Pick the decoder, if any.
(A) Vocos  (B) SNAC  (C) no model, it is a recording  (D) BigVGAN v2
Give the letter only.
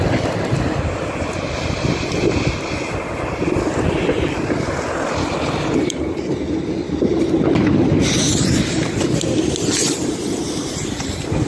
C